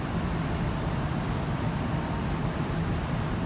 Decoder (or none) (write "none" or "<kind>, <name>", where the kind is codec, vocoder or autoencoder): none